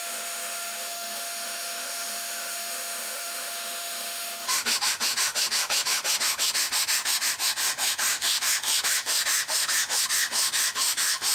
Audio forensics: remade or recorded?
remade